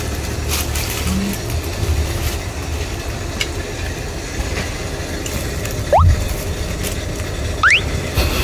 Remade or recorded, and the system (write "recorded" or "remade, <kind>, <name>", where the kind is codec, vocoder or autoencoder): recorded